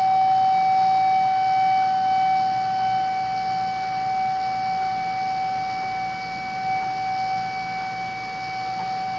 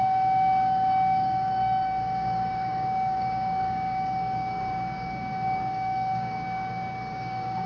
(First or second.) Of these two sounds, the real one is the first